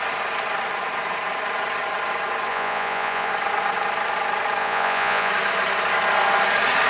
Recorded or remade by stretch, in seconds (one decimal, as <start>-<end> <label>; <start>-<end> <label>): 0.0-2.5 recorded; 2.5-3.3 remade; 3.3-4.6 recorded; 4.6-5.3 remade; 5.3-6.9 recorded